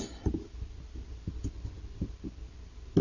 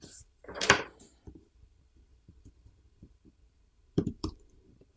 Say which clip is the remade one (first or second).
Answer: second